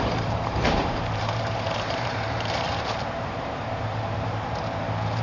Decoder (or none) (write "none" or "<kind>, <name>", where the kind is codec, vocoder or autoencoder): vocoder, BigVGAN v2